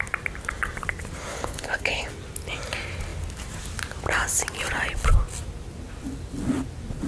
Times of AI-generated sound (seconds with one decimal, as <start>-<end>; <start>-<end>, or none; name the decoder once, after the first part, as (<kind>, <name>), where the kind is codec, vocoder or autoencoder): 1.3-2.1 (codec, HILCodec)